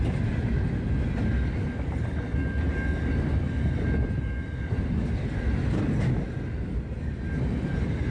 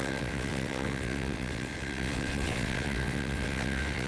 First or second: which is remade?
second